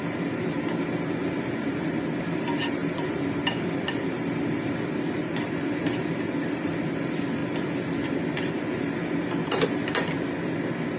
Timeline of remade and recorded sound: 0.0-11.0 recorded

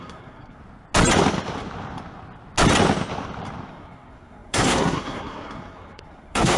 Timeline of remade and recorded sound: 0.0-0.6 remade; 0.6-3.7 recorded; 3.7-6.6 remade

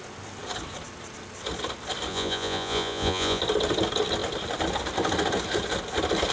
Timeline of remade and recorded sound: 0.0-2.1 recorded; 2.1-3.4 remade; 3.4-6.3 recorded

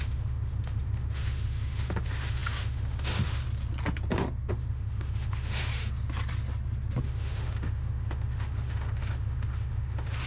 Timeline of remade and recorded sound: 0.0-3.4 remade; 3.4-4.5 recorded; 4.5-5.7 remade; 5.7-7.0 recorded; 7.0-10.3 remade

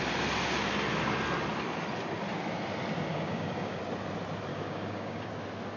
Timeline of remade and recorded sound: 0.0-3.1 recorded; 3.1-3.8 remade; 3.8-4.5 recorded; 4.5-5.3 remade; 5.3-5.8 recorded

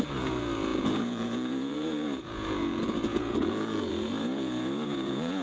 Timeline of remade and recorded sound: 0.0-5.4 remade

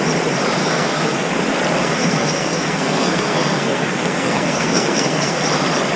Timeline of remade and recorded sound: 0.0-0.6 recorded; 0.6-1.3 remade; 1.3-1.8 recorded; 1.8-5.4 remade; 5.4-6.0 recorded

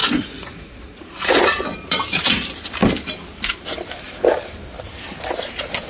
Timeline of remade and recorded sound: 0.0-1.7 remade; 1.7-5.9 recorded